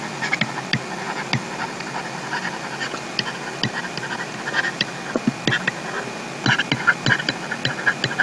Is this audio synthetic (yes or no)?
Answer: no